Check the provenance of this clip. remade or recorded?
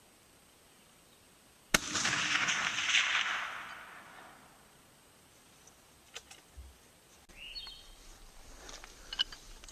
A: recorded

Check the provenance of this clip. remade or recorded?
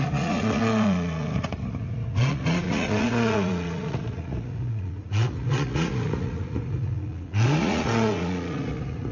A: remade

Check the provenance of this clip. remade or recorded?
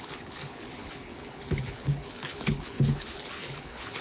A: remade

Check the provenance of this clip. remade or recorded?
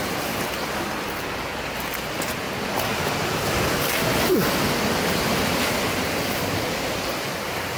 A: recorded